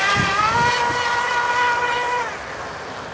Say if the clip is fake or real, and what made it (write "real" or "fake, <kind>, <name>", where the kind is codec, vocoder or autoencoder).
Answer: real